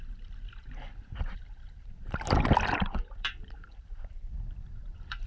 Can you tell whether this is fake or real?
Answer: fake